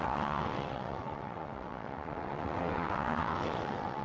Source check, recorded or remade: remade